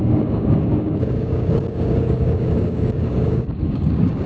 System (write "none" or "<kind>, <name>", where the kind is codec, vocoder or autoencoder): codec, DAC